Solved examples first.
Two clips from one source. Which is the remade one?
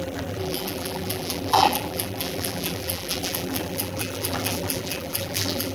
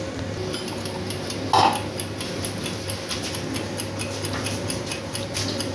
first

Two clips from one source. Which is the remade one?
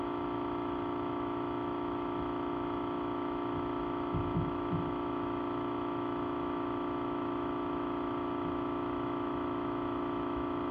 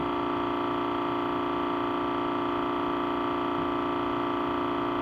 first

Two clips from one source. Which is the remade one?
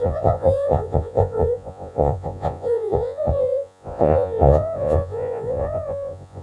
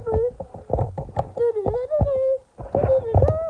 first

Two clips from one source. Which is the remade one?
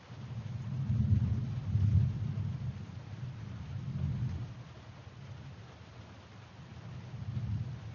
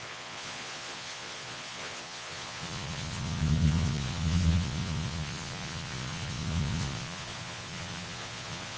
second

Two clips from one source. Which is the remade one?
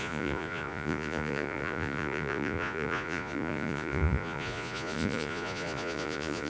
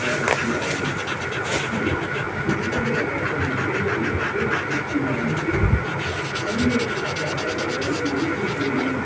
first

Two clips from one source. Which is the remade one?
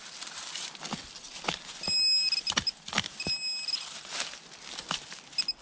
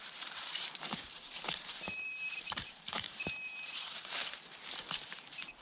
second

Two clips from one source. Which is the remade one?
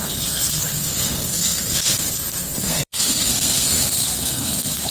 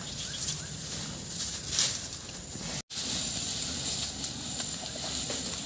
first